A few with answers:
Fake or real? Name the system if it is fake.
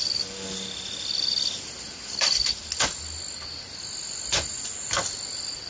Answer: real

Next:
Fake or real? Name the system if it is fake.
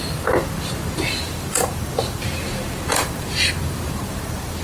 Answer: fake, vocoder, BigVGAN v2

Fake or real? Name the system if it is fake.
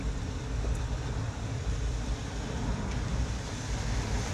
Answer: real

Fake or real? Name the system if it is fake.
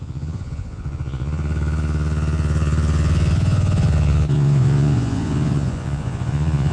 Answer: fake, vocoder, Vocos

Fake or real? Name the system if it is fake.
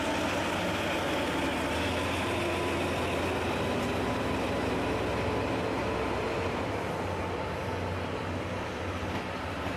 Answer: real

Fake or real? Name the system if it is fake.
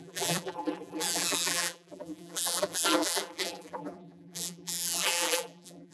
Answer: fake, vocoder, BigVGAN v2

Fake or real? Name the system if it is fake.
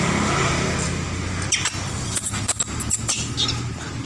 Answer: real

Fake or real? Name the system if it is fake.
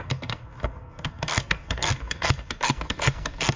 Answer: fake, codec, SNAC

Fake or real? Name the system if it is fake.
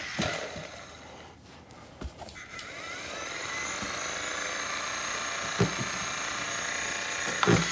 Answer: real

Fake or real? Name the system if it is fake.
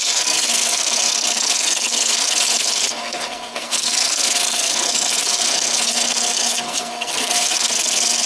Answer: fake, codec, SNAC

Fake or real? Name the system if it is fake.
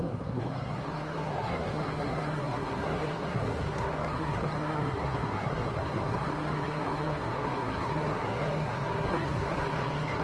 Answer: fake, codec, SNAC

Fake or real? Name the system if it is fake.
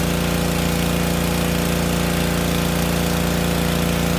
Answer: real